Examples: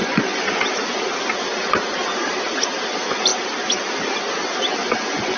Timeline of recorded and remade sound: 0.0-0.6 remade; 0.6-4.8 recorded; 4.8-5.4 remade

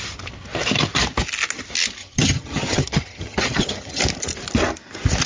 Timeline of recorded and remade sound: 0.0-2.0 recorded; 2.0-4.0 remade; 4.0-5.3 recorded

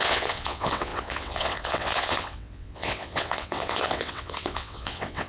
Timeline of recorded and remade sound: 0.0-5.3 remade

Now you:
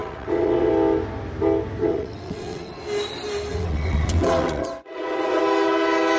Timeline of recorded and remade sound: 0.0-0.7 remade; 0.7-1.8 recorded; 1.8-2.8 remade; 2.8-3.5 recorded; 3.5-5.4 remade; 5.4-6.2 recorded

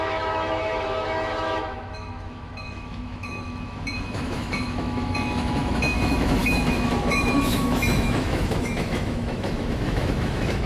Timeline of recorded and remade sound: 0.0-10.7 remade

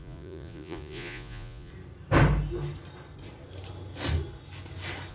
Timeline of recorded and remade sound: 0.0-1.7 remade; 1.7-5.1 recorded

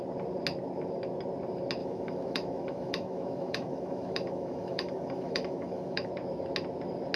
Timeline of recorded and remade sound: 0.0-1.8 recorded; 1.8-6.1 remade; 6.1-7.2 recorded